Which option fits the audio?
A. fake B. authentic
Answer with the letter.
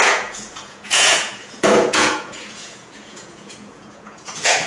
A